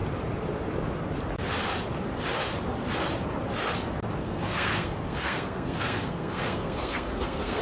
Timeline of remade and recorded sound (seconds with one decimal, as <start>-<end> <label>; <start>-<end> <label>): 0.0-4.2 recorded; 4.2-7.6 remade